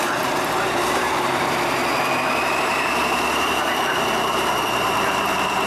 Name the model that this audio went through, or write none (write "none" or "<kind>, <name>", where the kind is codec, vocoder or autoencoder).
vocoder, BigVGAN v2